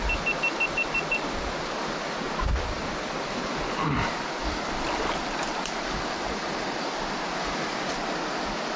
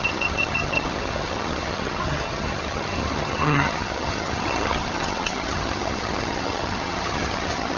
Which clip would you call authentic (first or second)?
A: first